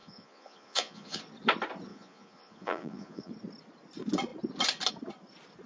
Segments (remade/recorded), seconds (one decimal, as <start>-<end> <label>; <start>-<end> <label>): 0.0-1.2 remade; 1.2-1.9 recorded; 1.9-3.3 remade; 3.3-5.7 recorded